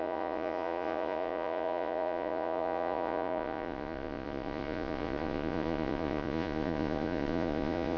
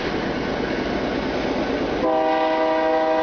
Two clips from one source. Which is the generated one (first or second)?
first